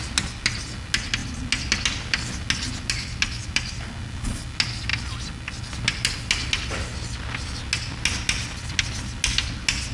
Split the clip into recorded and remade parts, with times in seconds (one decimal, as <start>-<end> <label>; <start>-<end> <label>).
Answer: 0.0-9.9 recorded